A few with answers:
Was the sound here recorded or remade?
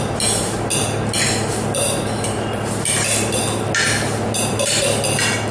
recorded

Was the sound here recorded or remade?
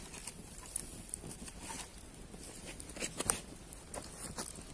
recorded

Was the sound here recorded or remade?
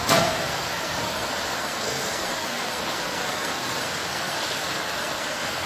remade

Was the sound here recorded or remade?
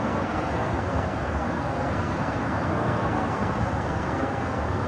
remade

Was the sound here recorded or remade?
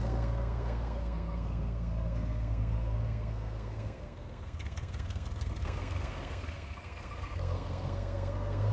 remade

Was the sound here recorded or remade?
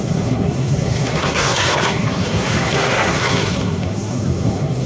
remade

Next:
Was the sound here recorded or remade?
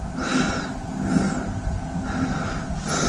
recorded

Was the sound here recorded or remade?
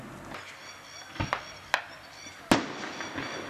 recorded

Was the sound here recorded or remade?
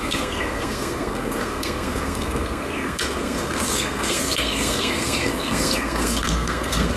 remade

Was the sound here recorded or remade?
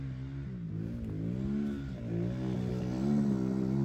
recorded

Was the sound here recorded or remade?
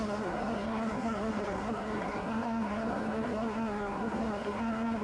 remade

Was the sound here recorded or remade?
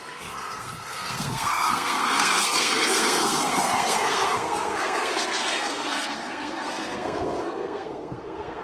remade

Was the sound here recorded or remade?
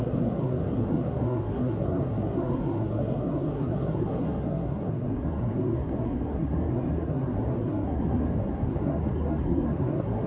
remade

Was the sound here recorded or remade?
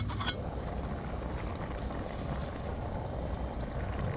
recorded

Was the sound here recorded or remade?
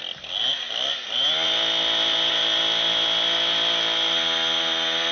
recorded